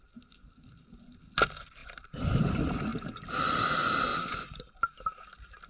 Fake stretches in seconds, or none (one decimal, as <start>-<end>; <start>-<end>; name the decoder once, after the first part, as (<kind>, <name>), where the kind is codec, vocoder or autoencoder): 1.8-2.4 (vocoder, BigVGAN v2); 4.1-4.7